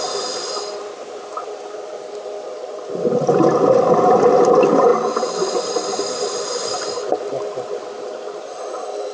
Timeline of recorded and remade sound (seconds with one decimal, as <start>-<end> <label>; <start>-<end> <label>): 0.0-9.1 recorded